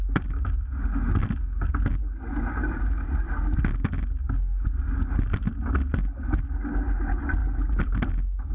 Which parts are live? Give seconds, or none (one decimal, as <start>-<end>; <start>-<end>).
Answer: 0.0-8.5